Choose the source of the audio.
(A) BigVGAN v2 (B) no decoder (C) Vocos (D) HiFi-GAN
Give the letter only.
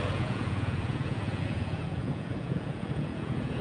C